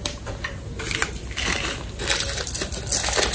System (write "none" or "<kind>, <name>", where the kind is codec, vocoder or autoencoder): none